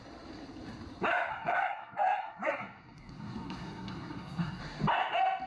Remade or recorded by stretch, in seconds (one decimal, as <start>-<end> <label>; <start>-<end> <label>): 0.0-1.3 recorded; 1.3-4.6 remade; 4.6-5.5 recorded

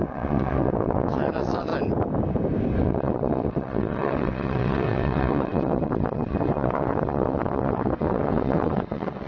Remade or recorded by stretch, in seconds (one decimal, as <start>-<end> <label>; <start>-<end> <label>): 0.0-1.7 remade; 1.7-2.8 recorded; 2.8-9.3 remade

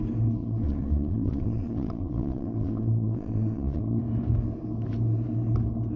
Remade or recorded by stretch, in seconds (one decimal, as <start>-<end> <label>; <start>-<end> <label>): 0.0-0.4 recorded; 0.4-4.0 remade; 4.0-6.0 recorded

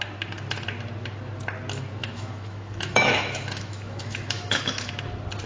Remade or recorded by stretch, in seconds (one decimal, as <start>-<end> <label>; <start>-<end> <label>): 0.0-2.0 recorded; 2.0-4.9 remade; 4.9-5.5 recorded

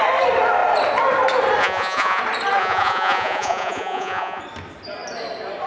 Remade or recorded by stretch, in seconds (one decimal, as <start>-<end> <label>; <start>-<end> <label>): 0.0-1.6 recorded; 1.6-2.2 remade; 2.2-2.6 recorded; 2.6-4.4 remade; 4.4-5.7 recorded